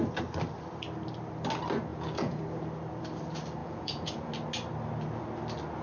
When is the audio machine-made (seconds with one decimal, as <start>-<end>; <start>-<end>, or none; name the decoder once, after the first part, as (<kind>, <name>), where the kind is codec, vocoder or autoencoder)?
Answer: 1.9-2.4 (vocoder, Vocos); 3.6-4.3